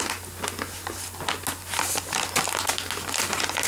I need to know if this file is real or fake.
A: real